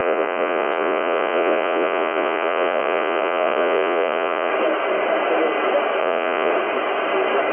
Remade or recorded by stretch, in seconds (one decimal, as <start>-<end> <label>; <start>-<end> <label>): 0.0-4.5 remade; 4.5-6.0 recorded; 6.0-6.5 remade; 6.5-7.5 recorded